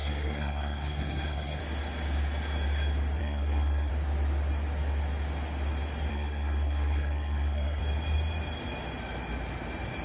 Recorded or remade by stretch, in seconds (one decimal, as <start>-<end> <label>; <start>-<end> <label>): 0.0-1.6 remade; 1.6-3.2 recorded; 3.2-3.9 remade; 3.9-6.1 recorded; 6.1-7.8 remade; 7.8-10.0 recorded